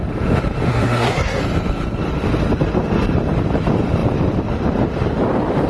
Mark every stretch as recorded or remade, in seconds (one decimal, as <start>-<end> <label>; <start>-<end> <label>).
0.0-0.7 recorded; 0.7-1.4 remade; 1.4-5.7 recorded